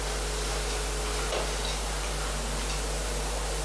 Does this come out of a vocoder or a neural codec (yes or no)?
no